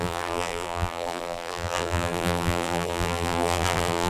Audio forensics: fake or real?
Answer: fake